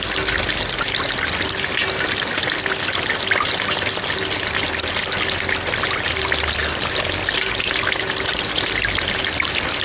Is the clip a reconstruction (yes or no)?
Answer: no